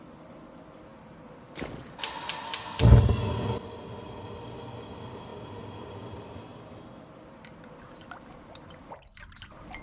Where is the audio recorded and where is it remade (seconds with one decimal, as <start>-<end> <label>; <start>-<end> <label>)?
0.0-9.8 recorded

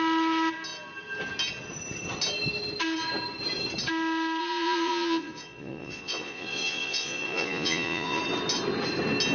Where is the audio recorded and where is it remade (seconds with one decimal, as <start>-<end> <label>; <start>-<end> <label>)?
0.0-4.4 recorded; 4.4-8.2 remade; 8.2-9.3 recorded

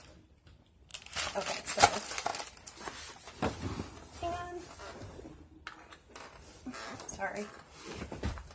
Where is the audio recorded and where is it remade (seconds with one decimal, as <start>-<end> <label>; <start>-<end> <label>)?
0.0-8.5 recorded